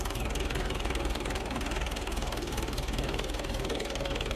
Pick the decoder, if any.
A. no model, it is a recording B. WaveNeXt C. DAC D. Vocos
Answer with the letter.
C